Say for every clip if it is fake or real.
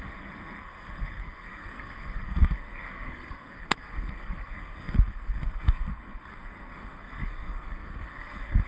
fake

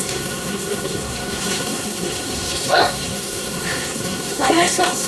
fake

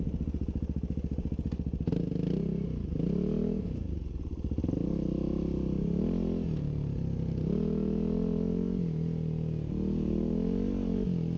real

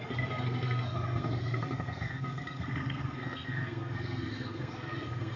fake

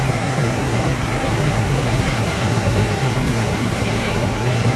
fake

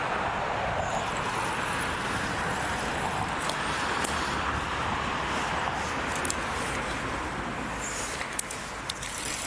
real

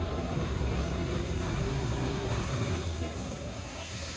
fake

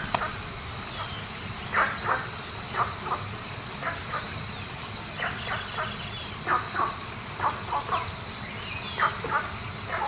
real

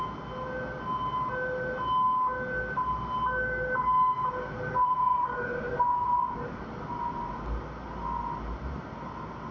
real